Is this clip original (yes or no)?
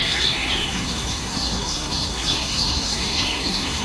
no